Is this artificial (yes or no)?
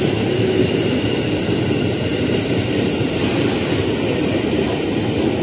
no